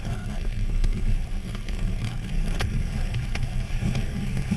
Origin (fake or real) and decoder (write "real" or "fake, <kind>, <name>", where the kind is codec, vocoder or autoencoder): fake, codec, SNAC